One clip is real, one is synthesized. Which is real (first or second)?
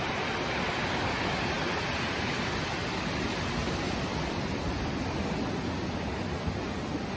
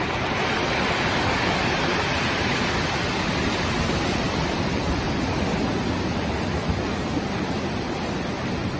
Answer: first